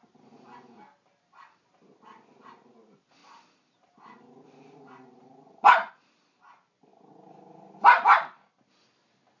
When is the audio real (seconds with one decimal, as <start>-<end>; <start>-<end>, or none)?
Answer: 0.0-9.4